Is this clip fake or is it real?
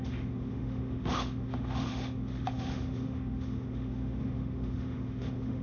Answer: fake